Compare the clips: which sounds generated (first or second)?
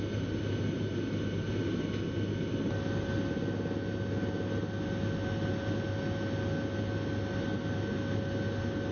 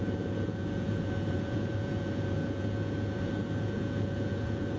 second